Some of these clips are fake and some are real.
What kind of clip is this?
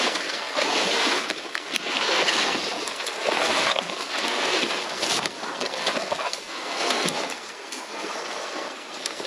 fake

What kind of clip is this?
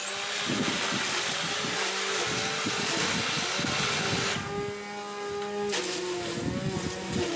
real